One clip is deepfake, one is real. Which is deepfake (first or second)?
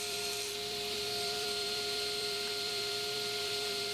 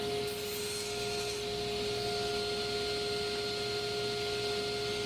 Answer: first